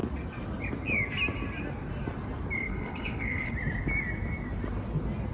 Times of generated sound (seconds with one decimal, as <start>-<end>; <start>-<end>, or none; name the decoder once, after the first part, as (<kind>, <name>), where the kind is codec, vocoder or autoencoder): 2.7-3.5 (codec, HILCodec)